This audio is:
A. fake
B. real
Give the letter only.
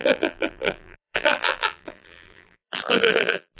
A